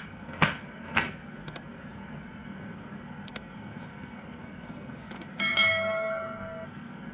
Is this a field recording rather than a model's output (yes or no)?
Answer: no